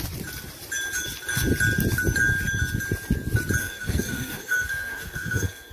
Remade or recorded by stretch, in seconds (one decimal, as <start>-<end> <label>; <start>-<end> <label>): 0.0-3.6 recorded; 3.6-5.7 remade